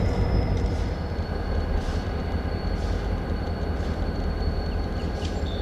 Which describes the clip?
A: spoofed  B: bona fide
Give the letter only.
A